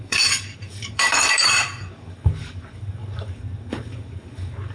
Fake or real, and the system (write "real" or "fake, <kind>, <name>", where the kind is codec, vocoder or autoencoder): fake, codec, DAC